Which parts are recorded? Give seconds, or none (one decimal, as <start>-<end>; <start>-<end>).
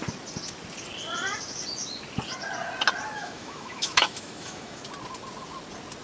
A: 0.0-3.2; 4.8-6.0